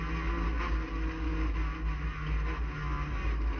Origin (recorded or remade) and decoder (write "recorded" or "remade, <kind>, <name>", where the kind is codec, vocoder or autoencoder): recorded